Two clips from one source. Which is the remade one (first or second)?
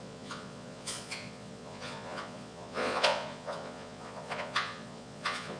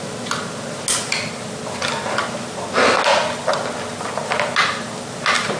first